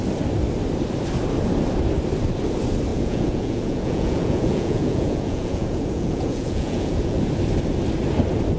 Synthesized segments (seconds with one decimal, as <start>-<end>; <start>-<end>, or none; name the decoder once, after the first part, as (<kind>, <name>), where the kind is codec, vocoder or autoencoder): 2.9-7.2 (vocoder, Vocos)

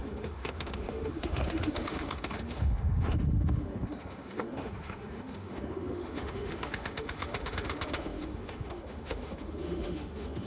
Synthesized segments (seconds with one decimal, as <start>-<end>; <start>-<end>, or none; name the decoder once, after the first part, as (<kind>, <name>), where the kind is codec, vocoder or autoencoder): 0.0-10.5 (autoencoder, DAC-VAE)